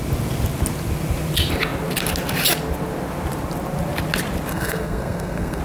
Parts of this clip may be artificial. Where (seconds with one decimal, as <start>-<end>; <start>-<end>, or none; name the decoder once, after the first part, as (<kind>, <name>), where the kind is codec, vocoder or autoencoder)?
4.5-5.6 (codec, SNAC)